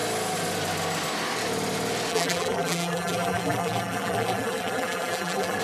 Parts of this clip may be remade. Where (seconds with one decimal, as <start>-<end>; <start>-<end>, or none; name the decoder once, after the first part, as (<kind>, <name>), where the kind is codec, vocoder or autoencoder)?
2.1-5.6 (vocoder, BigVGAN v2)